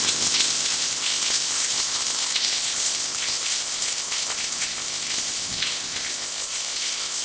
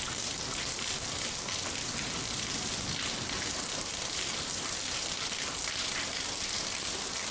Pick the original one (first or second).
second